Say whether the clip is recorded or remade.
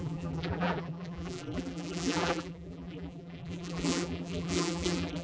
remade